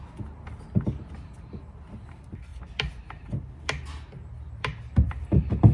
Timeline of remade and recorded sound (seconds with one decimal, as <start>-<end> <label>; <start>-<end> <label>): 0.0-5.7 recorded